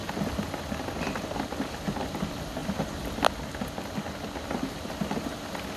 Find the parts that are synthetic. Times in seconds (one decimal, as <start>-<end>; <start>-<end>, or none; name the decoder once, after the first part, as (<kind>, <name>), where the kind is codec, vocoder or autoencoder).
0.0-2.6 (vocoder, BigVGAN v2)